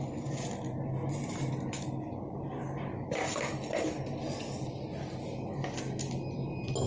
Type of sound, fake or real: real